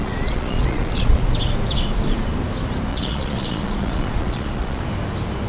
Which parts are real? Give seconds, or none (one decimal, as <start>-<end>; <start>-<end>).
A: 1.2-2.9; 4.8-5.5